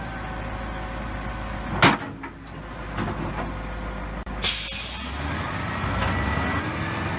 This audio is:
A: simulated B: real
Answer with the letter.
B